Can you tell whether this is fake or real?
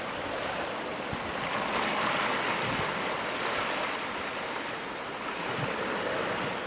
real